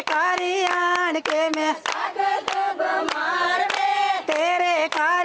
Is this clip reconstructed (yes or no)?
no